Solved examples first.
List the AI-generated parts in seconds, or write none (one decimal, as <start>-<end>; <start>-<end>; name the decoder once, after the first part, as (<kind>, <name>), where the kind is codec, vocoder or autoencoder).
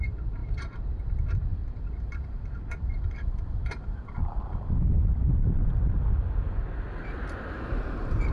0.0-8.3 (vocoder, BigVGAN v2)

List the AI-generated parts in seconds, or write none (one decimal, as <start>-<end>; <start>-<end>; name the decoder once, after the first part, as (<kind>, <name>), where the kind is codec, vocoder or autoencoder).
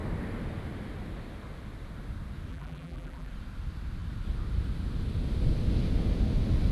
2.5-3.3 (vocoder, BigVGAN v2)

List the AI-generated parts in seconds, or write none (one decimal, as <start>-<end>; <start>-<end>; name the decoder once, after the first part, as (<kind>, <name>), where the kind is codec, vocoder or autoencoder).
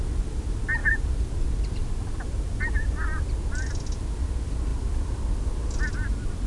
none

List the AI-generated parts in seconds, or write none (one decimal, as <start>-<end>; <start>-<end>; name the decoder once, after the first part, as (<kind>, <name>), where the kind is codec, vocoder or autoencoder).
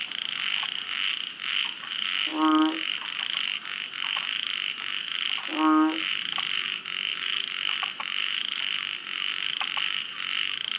none